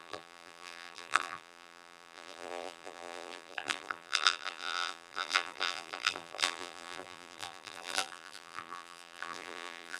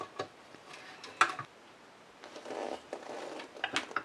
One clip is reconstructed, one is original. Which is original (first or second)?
second